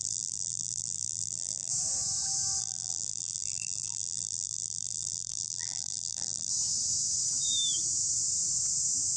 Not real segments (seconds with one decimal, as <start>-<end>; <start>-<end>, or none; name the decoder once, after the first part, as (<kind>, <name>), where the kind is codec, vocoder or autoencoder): 0.0-1.7 (vocoder, BigVGAN v2); 2.6-6.5